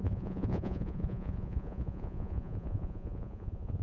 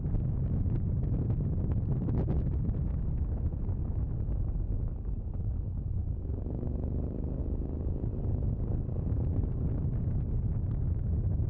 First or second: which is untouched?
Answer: second